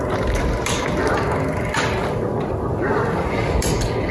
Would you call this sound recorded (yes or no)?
yes